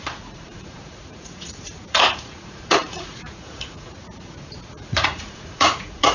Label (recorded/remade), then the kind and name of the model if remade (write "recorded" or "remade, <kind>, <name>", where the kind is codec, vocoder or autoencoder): remade, vocoder, Vocos